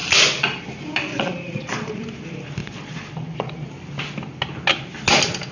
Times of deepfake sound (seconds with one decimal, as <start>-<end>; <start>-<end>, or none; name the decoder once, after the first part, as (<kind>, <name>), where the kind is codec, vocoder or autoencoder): 1.1-2.0 (vocoder, Vocos); 2.6-3.7